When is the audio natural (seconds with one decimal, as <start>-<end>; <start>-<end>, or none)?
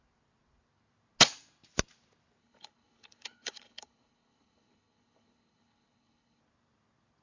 0.0-2.4; 6.4-7.2